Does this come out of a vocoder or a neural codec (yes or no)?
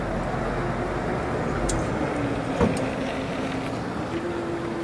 no